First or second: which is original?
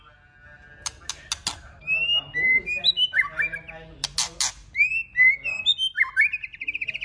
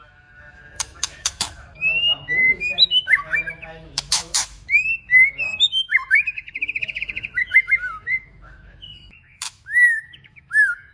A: first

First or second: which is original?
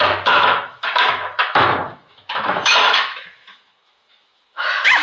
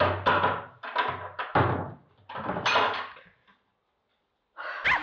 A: second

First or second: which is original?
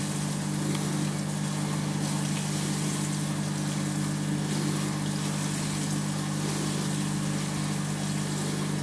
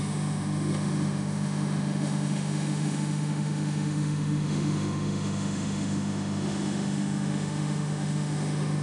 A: first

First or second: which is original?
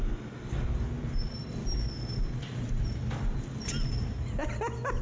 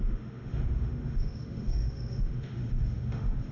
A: first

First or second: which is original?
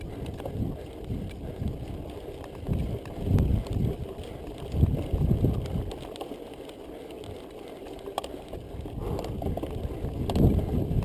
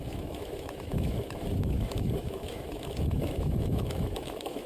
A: first